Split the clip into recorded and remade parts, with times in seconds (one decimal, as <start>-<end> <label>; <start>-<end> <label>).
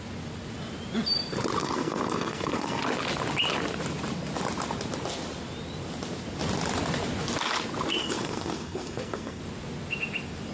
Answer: 0.0-1.6 recorded; 1.6-2.8 remade; 2.8-8.0 recorded; 8.0-9.4 remade; 9.4-10.5 recorded